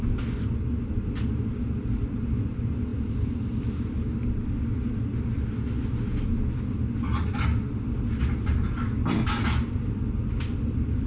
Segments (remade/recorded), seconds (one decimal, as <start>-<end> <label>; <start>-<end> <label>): 0.0-11.1 recorded